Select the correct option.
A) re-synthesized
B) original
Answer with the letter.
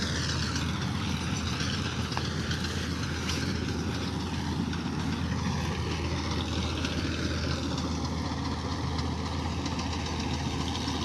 B